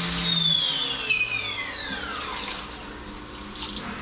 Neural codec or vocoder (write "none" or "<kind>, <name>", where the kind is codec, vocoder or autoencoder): none